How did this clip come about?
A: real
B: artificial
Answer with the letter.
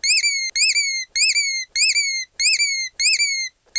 A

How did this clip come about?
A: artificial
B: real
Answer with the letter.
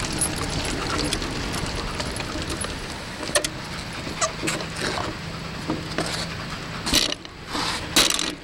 B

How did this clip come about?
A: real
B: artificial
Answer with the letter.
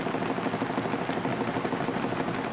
A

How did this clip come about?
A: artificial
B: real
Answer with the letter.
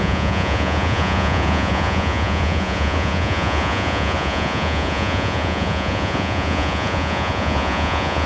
A